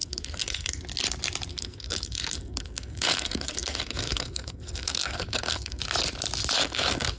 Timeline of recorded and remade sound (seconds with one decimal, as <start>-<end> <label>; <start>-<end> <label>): 0.0-0.8 remade; 0.8-1.5 recorded; 1.5-5.8 remade; 5.8-6.6 recorded; 6.6-7.2 remade